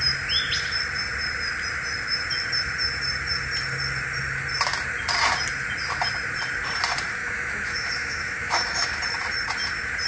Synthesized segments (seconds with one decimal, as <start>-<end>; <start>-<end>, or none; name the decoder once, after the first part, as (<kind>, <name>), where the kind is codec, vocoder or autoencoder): 7.2-9.0 (autoencoder, DAC-VAE)